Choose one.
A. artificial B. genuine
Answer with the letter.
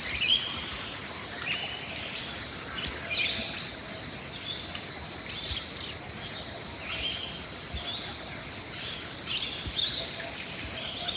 B